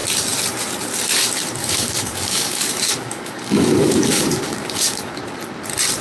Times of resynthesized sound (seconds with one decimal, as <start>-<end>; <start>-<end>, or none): 1.6-5.2